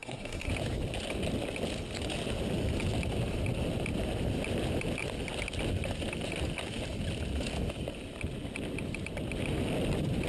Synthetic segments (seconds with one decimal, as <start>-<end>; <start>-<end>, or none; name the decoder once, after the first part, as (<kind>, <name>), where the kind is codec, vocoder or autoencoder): 0.0-0.5 (codec, SNAC)

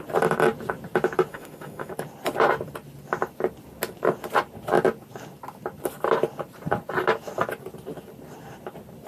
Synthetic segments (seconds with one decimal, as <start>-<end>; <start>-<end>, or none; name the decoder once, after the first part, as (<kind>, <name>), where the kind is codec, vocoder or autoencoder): 1.3-1.9 (autoencoder, DAC-VAE)

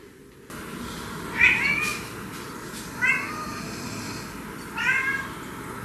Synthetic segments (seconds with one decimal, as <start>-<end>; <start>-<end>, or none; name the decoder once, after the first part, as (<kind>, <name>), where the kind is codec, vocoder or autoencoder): none

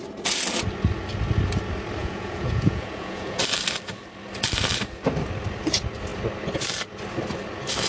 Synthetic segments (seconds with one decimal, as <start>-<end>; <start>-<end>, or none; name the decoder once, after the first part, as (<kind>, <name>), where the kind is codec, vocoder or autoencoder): 2.0-3.4 (vocoder, Vocos)

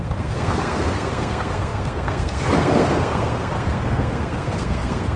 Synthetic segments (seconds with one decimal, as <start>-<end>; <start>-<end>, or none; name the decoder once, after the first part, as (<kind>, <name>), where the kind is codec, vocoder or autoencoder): 0.0-5.2 (codec, SNAC)